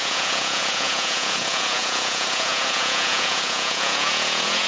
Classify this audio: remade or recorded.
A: remade